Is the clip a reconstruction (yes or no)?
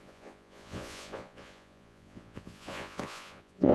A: yes